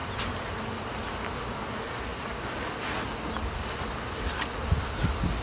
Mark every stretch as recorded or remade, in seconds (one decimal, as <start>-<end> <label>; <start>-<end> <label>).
0.0-1.4 remade; 1.4-5.4 recorded